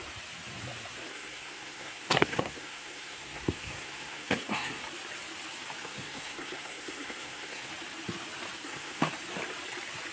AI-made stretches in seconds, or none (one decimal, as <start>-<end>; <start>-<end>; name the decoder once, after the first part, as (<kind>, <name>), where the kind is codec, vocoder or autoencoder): 1.1-4.8 (codec, SNAC); 5.8-7.7; 8.6-9.1